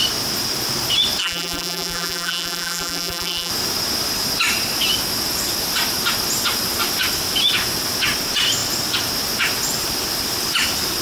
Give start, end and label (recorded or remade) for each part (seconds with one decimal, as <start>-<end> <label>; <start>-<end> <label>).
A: 0.0-1.2 recorded; 1.2-3.5 remade; 3.5-11.0 recorded